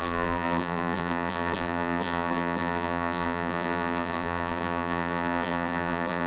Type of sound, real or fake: fake